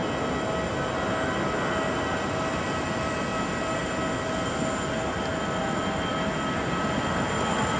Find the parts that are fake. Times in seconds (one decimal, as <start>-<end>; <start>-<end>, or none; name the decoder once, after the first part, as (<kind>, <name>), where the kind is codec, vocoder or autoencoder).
none